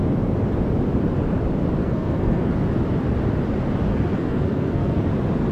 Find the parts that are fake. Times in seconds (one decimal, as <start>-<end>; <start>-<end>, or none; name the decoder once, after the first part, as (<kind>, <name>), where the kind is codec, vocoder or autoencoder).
1.8-2.5 (codec, SNAC); 3.9-5.1